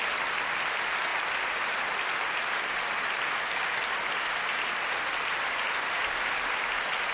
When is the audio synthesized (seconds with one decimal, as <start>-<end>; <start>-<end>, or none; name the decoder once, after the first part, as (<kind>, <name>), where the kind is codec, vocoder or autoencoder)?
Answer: none